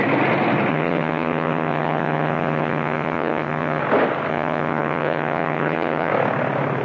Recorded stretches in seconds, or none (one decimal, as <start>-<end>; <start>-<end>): 0.0-0.7; 3.8-4.3; 6.1-6.8